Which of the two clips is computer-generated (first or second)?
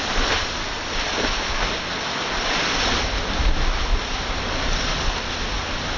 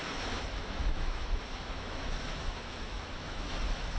second